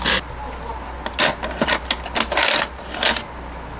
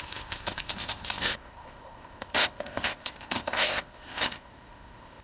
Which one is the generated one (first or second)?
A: second